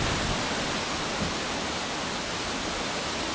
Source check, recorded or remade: recorded